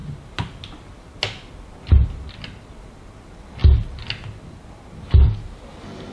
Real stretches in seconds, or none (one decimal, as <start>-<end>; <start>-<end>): 0.0-6.1